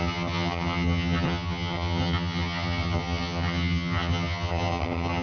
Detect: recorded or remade remade